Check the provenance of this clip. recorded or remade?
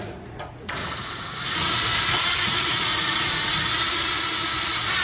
remade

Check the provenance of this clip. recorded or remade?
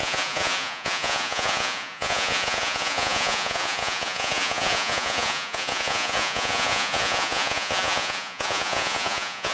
remade